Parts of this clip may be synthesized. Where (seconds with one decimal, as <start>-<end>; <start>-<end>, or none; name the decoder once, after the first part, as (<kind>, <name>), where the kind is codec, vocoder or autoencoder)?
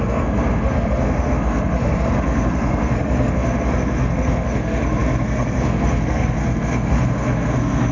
0.0-7.9 (codec, SNAC)